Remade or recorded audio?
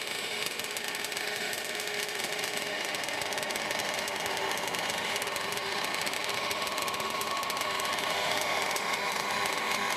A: remade